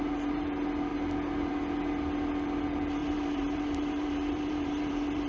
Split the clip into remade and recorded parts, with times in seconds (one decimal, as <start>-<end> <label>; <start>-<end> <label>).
0.0-3.0 recorded; 3.0-5.3 remade

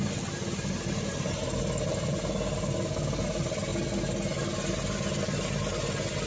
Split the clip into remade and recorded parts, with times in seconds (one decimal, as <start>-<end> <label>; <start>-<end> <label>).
0.0-6.3 recorded

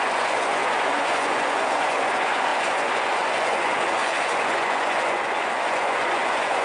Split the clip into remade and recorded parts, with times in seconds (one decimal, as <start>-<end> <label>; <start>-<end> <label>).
0.0-6.6 remade

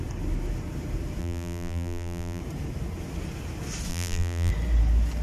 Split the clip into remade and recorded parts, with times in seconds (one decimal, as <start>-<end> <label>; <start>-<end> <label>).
0.0-1.2 recorded; 1.2-2.4 remade; 2.4-3.9 recorded; 3.9-4.5 remade; 4.5-5.2 recorded